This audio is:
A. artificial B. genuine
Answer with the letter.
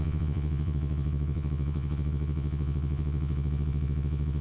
A